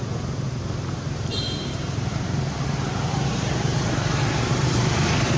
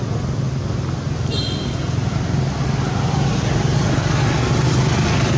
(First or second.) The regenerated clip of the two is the first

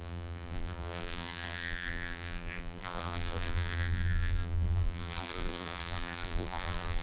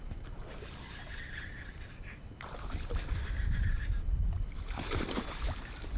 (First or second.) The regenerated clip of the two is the first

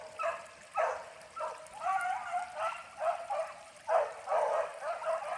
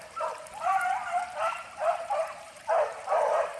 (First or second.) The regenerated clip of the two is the second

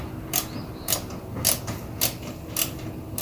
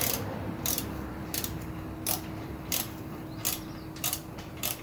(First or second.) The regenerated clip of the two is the second